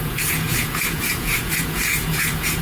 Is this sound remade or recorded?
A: remade